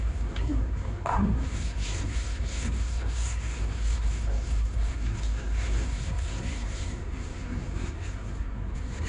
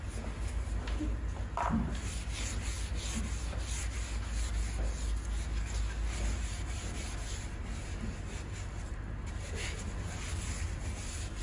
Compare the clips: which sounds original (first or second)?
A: second